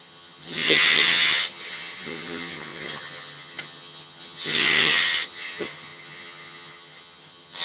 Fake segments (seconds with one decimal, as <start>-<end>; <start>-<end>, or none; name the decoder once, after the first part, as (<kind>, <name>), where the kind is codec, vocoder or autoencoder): 0.0-7.6 (vocoder, HiFi-GAN)